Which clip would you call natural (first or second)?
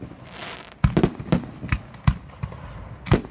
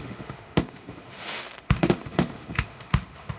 first